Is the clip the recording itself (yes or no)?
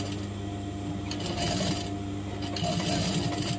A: yes